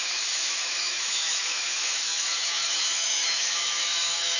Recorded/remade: remade